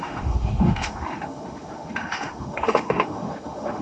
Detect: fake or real fake